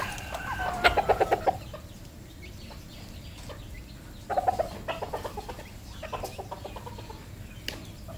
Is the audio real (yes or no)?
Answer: yes